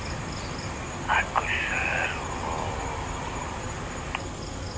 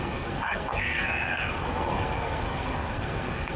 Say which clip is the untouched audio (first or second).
first